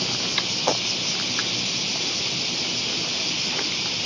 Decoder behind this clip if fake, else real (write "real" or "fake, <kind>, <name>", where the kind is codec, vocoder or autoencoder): real